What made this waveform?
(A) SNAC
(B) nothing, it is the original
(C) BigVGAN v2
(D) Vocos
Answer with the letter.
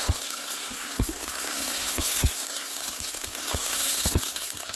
A